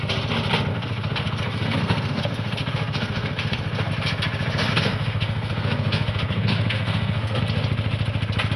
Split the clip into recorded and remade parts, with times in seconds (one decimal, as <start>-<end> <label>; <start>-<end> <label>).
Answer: 0.0-0.7 recorded; 0.7-3.9 remade; 3.9-4.7 recorded; 4.7-7.4 remade; 7.4-8.6 recorded